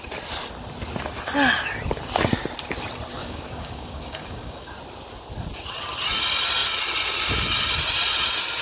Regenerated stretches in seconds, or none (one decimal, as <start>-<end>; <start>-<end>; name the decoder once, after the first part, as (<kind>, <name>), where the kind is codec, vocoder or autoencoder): 3.2-4.7 (codec, DAC)

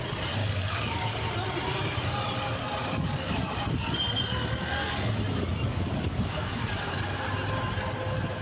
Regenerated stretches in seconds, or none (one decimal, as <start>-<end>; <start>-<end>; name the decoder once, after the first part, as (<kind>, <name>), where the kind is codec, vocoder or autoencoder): 0.4-1.3 (codec, DAC); 2.8-3.5; 5.7-7.2

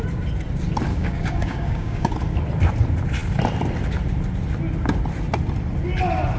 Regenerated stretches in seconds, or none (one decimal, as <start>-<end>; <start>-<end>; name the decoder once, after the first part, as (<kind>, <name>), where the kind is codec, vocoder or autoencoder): 0.9-2.1 (codec, DAC)

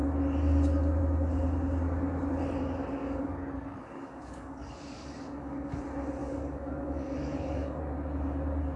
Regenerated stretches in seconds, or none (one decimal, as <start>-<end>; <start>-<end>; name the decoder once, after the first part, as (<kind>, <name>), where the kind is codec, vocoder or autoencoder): 3.0-5.8 (codec, DAC); 6.2-7.8

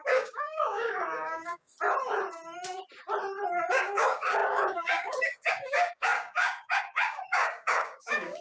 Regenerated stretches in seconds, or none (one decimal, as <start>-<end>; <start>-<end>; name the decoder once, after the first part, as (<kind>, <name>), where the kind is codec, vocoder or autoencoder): 0.0-1.7 (codec, DAC); 3.7-8.4

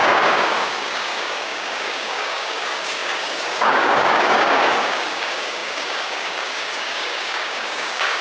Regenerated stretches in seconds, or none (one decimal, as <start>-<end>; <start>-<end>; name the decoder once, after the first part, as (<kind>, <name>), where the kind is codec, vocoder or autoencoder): 0.0-8.2 (codec, DAC)